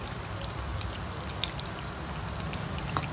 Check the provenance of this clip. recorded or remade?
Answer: recorded